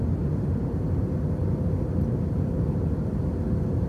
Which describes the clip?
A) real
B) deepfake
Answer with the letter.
A